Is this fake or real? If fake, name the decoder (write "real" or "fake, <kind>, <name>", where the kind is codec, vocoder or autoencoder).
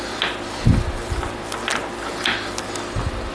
real